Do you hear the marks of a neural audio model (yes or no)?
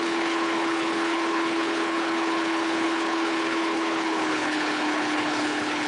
yes